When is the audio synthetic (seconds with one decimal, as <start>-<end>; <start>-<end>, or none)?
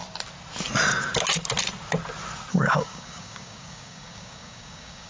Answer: 2.5-5.1